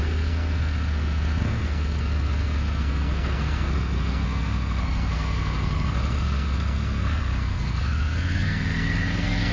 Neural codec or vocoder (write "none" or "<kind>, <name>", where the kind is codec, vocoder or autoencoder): codec, SNAC